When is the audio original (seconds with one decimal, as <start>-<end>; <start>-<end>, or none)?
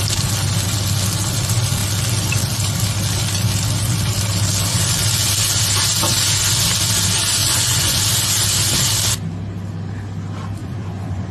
0.0-7.4; 8.0-10.6